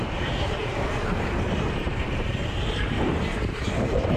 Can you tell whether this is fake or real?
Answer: fake